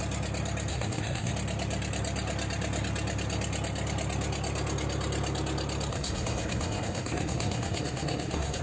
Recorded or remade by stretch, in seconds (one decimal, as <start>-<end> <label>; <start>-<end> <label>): 0.0-0.7 recorded; 0.7-1.3 remade; 1.3-5.9 recorded; 5.9-8.6 remade